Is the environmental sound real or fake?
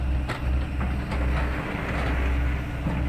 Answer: real